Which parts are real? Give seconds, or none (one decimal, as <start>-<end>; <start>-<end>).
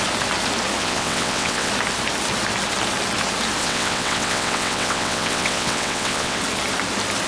0.0-0.8; 1.7-3.6; 6.4-7.3